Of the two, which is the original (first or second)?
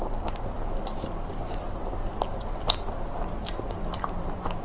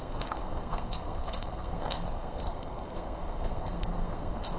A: first